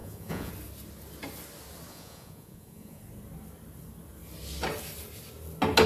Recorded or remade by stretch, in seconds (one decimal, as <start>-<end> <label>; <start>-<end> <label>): 0.0-0.5 remade; 0.5-1.9 recorded; 1.9-3.0 remade; 3.0-5.9 recorded